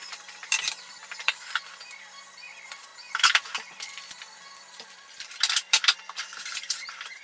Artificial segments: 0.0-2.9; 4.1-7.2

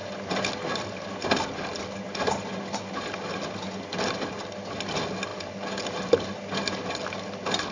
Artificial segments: none

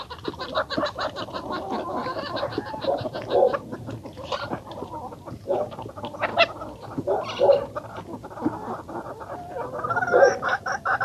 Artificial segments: 2.0-5.6

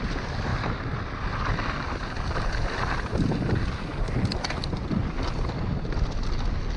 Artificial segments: none

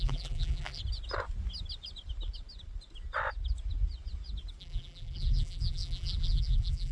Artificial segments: 0.0-0.8; 4.6-6.9